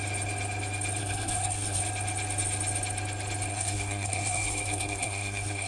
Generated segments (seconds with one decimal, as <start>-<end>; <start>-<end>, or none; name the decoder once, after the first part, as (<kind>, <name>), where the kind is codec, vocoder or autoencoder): 1.0-1.8 (codec, SNAC); 3.5-5.7